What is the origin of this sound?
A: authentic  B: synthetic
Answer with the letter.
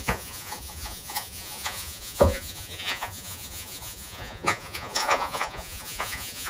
B